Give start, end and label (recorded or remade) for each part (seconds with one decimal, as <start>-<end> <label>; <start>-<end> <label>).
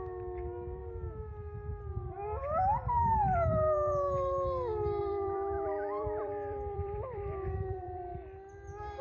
0.0-5.0 recorded; 5.0-8.1 remade; 8.1-9.0 recorded